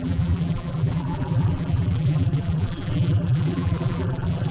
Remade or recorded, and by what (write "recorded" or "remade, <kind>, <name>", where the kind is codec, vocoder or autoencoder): remade, vocoder, BigVGAN v2